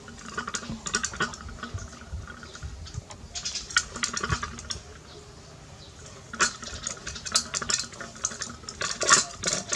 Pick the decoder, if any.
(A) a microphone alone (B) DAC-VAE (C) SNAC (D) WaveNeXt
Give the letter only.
A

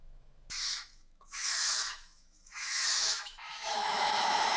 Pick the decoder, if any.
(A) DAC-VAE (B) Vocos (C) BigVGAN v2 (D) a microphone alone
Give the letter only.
A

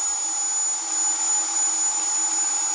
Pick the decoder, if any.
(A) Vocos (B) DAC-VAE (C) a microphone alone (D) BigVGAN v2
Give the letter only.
C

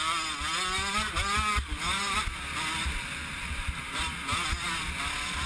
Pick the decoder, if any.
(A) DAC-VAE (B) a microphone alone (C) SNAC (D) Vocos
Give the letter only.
B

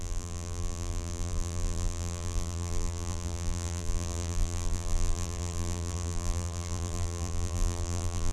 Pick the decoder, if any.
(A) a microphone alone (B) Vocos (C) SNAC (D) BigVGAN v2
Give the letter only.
D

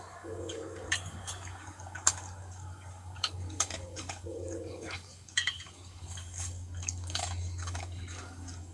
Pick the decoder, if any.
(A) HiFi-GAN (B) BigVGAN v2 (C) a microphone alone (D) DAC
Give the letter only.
D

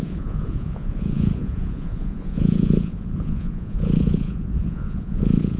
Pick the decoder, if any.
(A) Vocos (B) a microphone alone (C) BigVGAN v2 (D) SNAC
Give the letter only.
A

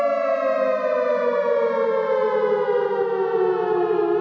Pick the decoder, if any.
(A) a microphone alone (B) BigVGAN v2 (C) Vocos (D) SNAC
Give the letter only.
A